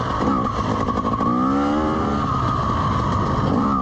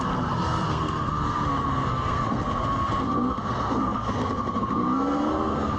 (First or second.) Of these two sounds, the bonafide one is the first